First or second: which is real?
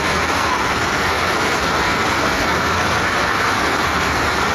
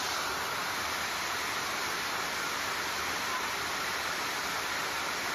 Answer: second